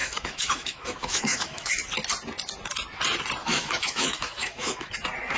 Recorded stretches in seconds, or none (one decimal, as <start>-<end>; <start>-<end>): 1.7-3.4; 4.9-5.4